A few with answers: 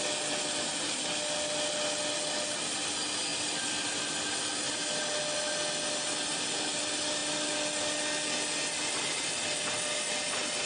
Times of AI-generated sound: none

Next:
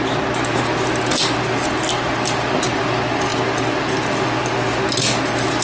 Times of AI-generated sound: none

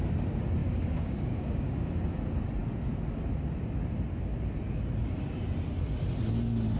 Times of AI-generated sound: 0.6-1.9 (codec, DAC)

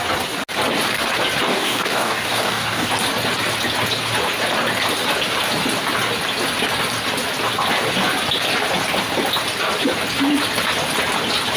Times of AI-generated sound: 1.5-2.9 (codec, DAC)

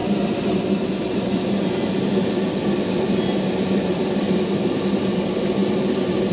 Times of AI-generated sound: none

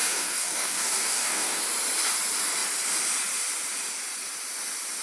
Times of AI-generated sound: 0.0-1.6 (codec, DAC)

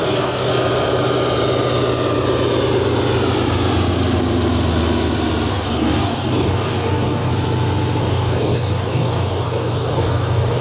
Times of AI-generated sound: 0.0-0.5 (codec, DAC); 5.5-7.3; 8.0-10.6